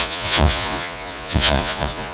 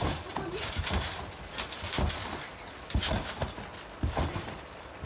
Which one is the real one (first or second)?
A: second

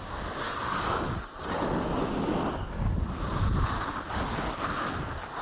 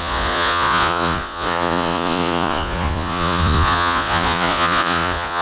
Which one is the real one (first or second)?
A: first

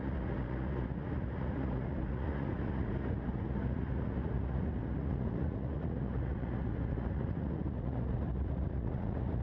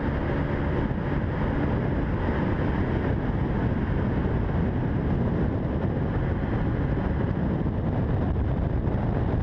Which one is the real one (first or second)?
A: second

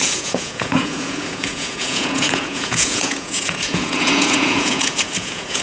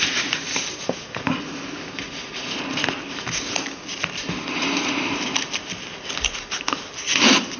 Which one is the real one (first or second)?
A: second